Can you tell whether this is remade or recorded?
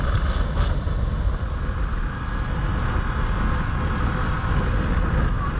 recorded